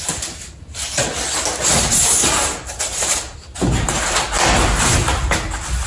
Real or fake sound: real